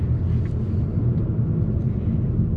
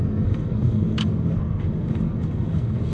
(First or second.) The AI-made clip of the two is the second